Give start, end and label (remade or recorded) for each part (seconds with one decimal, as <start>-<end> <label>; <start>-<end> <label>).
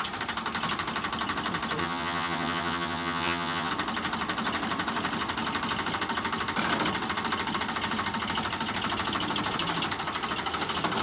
0.0-1.8 recorded; 1.8-3.7 remade; 3.7-11.0 recorded